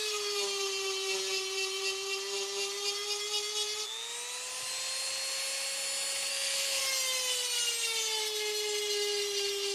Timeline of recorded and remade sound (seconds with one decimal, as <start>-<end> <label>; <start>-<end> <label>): 0.0-6.3 recorded; 6.3-6.8 remade; 6.8-9.7 recorded